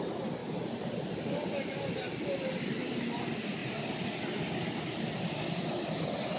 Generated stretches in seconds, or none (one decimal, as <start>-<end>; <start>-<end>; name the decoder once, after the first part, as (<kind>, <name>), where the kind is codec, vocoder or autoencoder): 0.4-1.1 (vocoder, BigVGAN v2); 3.6-4.1